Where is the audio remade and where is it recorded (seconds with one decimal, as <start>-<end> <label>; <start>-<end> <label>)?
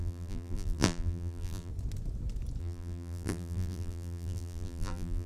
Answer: 0.0-1.7 remade; 1.7-2.6 recorded; 2.6-5.3 remade